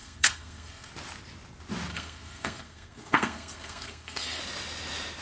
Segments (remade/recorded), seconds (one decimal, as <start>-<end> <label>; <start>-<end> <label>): 0.0-0.9 remade; 0.9-1.9 recorded; 1.9-4.4 remade; 4.4-5.2 recorded